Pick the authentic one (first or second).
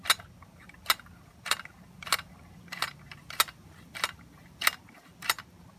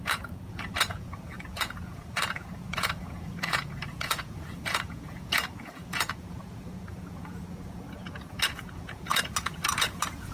first